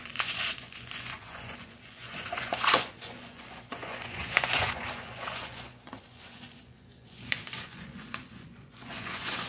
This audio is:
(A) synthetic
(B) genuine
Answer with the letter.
A